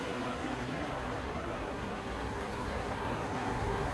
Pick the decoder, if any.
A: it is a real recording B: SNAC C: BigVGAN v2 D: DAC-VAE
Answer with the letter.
B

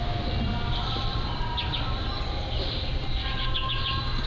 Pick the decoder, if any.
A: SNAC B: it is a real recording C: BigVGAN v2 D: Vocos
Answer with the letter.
B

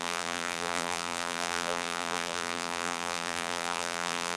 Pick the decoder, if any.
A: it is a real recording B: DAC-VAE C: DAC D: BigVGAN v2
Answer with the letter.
D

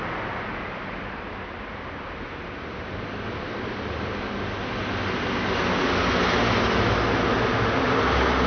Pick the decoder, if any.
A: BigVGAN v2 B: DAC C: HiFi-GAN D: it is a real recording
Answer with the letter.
D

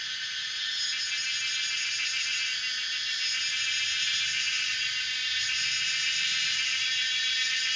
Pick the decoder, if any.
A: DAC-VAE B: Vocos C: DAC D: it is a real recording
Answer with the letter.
D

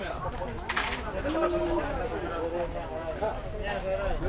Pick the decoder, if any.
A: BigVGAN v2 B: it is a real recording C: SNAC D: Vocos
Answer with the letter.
B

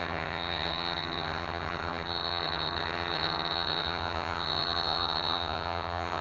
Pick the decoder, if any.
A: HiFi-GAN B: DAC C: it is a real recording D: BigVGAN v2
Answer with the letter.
A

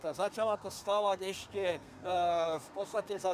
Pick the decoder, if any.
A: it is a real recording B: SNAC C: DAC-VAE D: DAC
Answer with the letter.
B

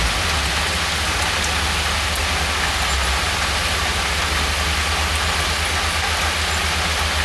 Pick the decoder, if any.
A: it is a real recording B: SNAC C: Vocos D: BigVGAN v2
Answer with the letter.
A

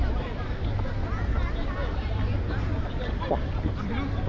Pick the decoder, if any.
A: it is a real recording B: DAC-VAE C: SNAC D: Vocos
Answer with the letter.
A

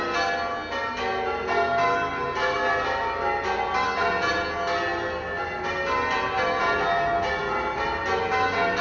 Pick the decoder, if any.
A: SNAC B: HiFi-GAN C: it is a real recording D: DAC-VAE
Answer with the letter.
C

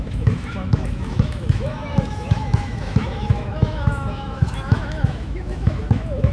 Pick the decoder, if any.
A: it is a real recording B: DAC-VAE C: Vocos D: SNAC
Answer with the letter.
B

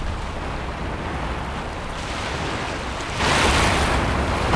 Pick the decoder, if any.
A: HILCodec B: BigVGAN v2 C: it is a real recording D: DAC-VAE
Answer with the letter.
C